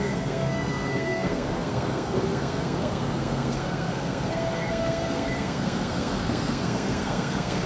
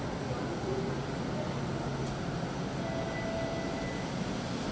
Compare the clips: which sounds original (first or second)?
second